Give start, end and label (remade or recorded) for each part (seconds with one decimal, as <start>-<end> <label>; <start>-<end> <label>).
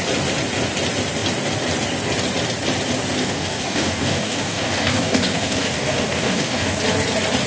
0.0-3.2 recorded; 3.2-6.8 remade; 6.8-7.5 recorded